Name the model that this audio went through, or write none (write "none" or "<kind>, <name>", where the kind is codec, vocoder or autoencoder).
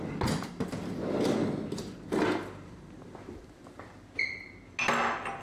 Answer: none